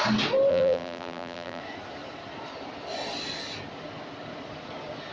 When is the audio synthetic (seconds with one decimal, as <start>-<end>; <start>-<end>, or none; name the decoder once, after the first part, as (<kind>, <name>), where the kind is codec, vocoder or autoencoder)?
0.5-1.6 (vocoder, BigVGAN v2)